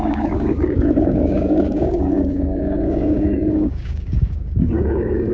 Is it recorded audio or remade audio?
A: remade